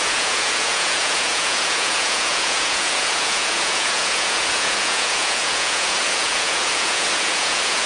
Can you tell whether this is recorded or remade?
remade